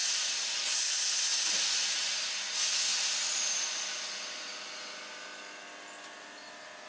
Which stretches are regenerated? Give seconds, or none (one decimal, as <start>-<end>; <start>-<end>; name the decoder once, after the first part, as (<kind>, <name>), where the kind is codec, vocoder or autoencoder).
none